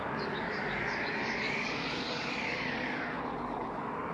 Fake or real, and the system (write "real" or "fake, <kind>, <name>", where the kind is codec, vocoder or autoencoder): fake, codec, DAC